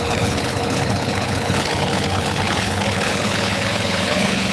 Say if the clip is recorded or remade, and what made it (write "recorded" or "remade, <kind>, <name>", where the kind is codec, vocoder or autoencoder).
remade, codec, HILCodec